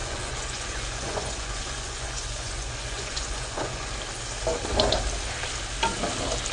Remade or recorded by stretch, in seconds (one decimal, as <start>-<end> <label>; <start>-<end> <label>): 0.0-3.9 remade; 3.9-6.5 recorded